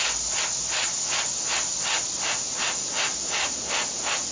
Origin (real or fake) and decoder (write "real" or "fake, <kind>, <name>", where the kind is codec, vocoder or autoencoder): real